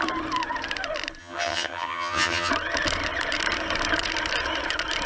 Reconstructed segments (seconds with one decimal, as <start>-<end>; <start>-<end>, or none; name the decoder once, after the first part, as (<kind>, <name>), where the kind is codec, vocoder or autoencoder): 1.2-2.5 (vocoder, HiFi-GAN)

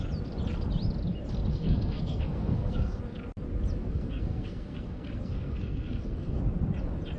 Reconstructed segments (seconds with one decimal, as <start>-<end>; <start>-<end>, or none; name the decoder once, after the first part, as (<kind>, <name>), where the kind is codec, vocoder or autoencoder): 1.5-3.0 (codec, SNAC); 3.8-6.4

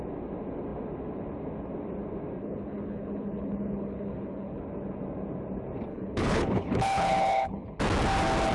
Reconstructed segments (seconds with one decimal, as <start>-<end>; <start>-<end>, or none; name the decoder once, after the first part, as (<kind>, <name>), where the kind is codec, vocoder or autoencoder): 2.4-4.6 (codec, HILCodec); 5.9-7.8